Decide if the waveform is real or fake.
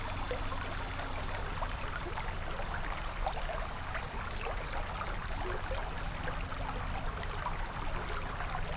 real